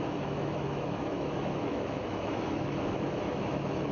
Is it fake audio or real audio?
fake